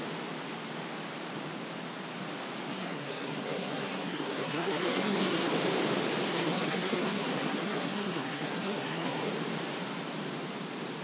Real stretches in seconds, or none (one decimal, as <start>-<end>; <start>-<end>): 0.0-2.7; 5.5-6.3; 9.3-11.0